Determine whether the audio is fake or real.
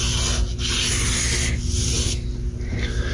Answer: real